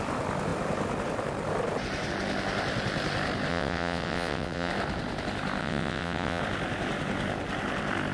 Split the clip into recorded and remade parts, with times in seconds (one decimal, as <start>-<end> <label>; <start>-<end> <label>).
0.0-3.5 recorded; 3.5-4.7 remade; 4.7-5.6 recorded; 5.6-6.4 remade; 6.4-8.1 recorded